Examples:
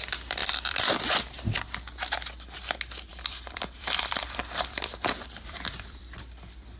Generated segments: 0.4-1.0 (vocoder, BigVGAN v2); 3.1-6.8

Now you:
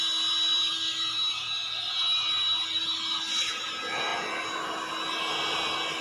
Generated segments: 4.1-4.9 (vocoder, BigVGAN v2)

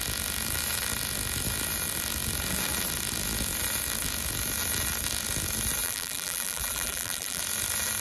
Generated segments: 5.8-7.4 (vocoder, BigVGAN v2)

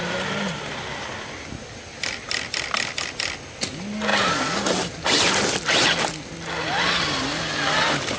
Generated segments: none